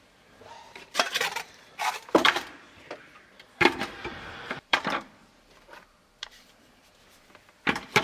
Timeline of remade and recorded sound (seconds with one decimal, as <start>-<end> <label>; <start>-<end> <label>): 0.0-8.0 remade